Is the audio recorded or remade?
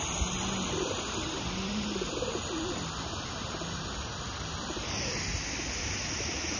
recorded